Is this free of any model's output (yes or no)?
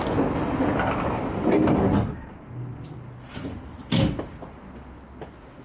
yes